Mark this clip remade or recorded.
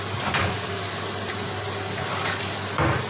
recorded